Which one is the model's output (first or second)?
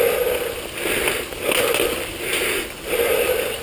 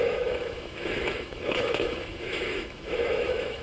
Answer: second